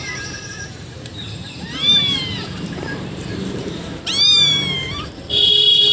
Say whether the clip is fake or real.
fake